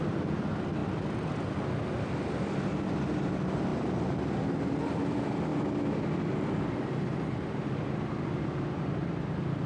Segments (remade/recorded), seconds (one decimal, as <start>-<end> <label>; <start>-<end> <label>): 0.0-9.7 recorded